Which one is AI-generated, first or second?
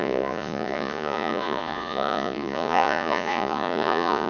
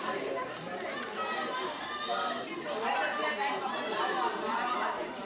first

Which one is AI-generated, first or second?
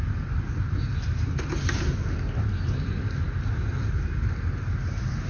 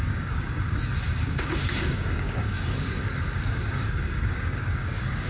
second